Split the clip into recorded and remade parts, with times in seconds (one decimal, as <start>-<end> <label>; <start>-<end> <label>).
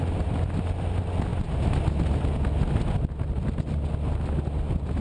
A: 0.0-5.0 recorded